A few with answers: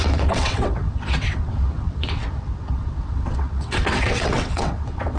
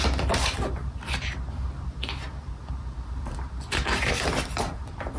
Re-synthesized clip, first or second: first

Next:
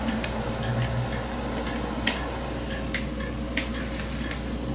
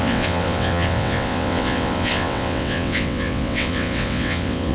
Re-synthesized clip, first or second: second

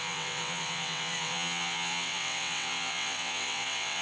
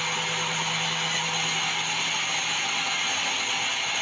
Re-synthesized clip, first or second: first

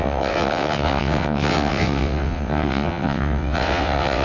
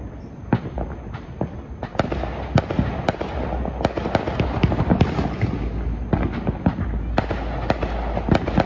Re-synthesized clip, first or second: first